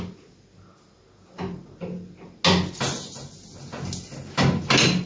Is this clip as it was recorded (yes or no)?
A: yes